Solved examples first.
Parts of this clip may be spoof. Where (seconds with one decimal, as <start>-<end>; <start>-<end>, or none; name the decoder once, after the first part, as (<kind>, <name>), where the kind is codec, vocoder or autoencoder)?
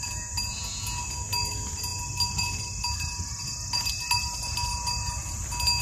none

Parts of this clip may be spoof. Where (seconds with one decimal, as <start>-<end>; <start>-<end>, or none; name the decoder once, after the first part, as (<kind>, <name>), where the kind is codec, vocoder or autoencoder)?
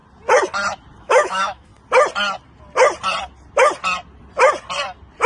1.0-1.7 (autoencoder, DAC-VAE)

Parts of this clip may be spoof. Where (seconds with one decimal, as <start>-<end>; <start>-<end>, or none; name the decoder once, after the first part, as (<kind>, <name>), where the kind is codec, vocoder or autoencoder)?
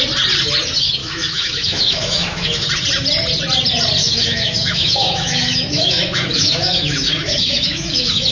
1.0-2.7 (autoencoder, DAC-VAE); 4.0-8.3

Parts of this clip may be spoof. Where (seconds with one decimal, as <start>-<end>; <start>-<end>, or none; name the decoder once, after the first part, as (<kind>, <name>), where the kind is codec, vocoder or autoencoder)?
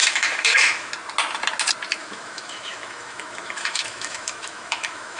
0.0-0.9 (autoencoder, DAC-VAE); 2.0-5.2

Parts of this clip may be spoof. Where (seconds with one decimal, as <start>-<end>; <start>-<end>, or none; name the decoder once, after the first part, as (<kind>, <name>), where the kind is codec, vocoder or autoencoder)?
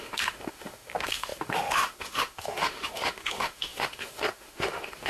0.0-5.1 (autoencoder, DAC-VAE)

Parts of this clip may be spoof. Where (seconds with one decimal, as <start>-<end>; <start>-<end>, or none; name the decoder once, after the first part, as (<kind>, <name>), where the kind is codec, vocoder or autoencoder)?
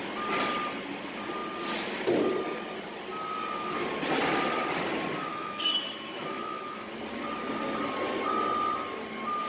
5.3-6.9 (autoencoder, DAC-VAE)